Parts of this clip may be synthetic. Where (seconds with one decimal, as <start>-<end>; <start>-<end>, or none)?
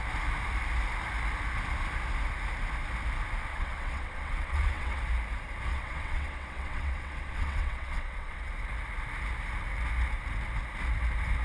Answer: 3.5-5.0; 5.7-8.5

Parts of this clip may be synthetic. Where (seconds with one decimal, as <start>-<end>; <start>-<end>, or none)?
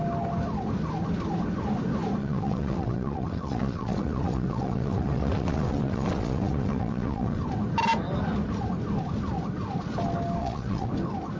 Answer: 2.2-7.4; 10.4-10.9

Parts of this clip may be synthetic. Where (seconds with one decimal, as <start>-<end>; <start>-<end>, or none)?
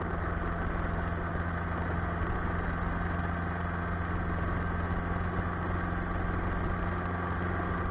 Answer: none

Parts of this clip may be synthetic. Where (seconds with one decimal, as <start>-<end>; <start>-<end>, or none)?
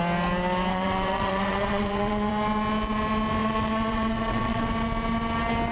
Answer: 0.7-2.3; 3.4-4.7